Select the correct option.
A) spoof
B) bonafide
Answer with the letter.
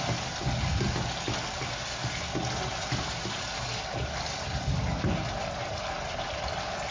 B